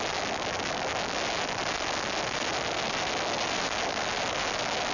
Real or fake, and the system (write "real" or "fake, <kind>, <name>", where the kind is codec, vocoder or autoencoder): real